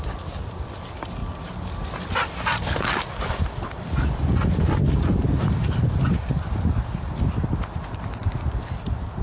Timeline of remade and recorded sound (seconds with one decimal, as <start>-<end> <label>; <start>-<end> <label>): 0.0-9.2 recorded